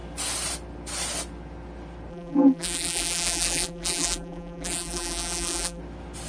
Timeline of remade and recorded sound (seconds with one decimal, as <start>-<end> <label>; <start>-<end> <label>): 0.0-2.1 recorded; 2.1-5.8 remade; 5.8-6.3 recorded